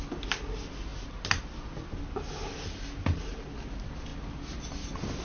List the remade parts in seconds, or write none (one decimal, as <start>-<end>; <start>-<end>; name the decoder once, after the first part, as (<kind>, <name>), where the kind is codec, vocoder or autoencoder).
none